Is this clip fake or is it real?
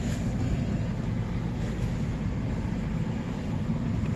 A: real